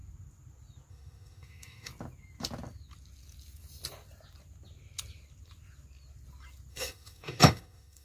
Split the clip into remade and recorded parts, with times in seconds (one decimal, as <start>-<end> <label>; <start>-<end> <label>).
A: 0.0-0.9 recorded; 0.9-1.9 remade; 1.9-6.7 recorded; 6.7-8.0 remade